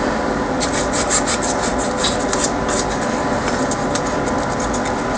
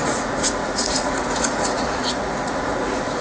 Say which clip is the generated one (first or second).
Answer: second